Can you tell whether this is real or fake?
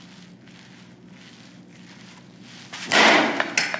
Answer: real